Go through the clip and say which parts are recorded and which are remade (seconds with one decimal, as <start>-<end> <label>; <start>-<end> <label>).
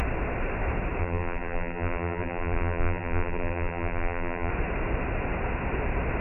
0.0-1.0 recorded; 1.0-4.5 remade; 4.5-6.2 recorded